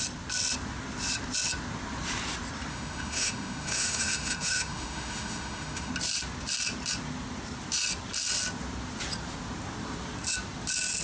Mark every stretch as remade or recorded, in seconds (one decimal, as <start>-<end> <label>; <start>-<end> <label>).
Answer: 0.0-2.7 recorded; 2.7-5.9 remade; 5.9-11.0 recorded